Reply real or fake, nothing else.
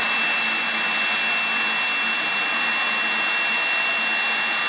real